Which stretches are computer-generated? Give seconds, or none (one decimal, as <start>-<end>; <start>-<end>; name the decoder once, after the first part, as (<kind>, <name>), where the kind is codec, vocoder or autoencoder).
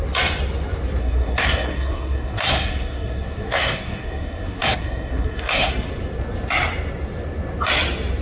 1.0-5.7 (codec, SNAC)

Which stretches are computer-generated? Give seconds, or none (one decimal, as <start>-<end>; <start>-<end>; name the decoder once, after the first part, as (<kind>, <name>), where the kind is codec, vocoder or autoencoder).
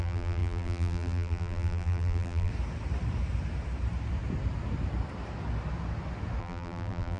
0.0-2.5 (vocoder, BigVGAN v2); 6.4-7.2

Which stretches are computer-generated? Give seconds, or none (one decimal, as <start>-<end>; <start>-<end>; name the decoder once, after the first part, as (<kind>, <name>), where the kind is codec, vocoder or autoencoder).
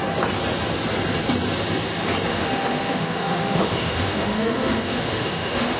2.3-5.8 (autoencoder, DAC-VAE)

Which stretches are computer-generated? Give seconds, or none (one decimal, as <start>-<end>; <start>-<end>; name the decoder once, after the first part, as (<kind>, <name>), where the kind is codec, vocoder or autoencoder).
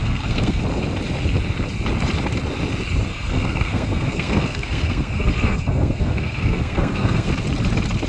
0.0-0.6 (codec, SNAC); 3.1-7.3